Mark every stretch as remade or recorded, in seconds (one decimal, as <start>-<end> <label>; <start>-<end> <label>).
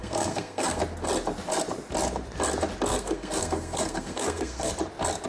0.0-0.8 remade; 0.8-2.9 recorded; 2.9-4.7 remade; 4.7-5.3 recorded